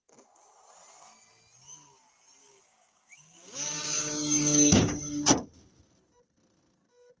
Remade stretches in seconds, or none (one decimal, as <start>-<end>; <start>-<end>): 2.4-5.0